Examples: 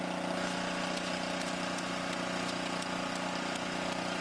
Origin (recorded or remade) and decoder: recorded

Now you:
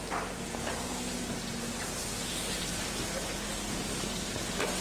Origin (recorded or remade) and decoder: recorded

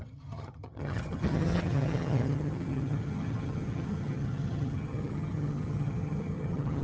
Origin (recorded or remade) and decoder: remade, vocoder, HiFi-GAN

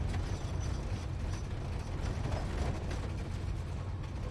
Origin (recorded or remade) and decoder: recorded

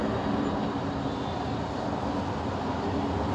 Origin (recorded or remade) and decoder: recorded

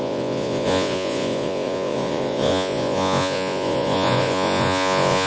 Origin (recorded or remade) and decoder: remade, vocoder, Vocos